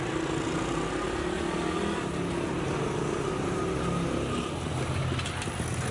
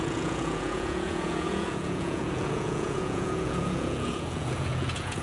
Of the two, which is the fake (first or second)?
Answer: second